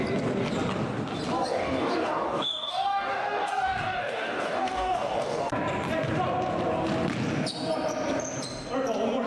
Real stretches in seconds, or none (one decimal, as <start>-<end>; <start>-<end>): 0.0-1.5; 5.5-9.3